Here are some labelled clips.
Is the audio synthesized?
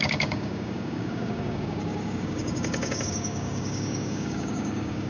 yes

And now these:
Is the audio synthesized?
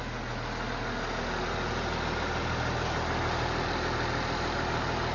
no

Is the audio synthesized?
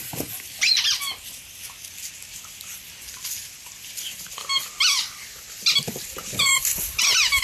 no